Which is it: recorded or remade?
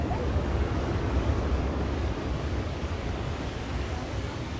remade